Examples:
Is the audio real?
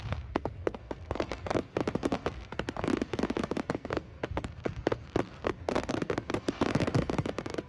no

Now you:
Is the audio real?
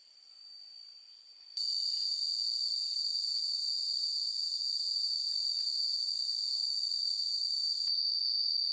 yes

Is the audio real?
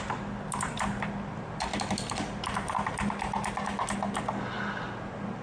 yes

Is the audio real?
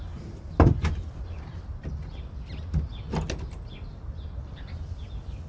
yes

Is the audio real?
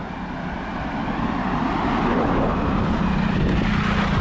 yes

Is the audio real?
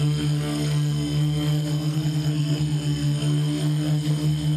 no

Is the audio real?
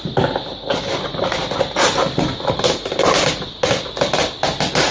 yes